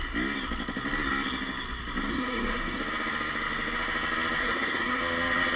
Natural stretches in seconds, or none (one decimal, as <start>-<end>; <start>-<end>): 0.0-2.1; 2.8-4.4; 5.0-5.6